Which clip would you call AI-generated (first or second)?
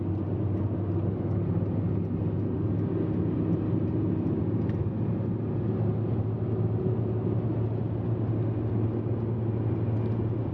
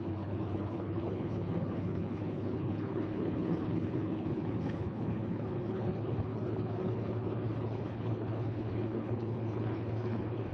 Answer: second